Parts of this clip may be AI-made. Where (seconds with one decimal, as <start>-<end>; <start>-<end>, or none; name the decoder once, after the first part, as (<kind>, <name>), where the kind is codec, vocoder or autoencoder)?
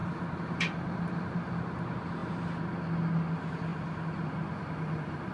none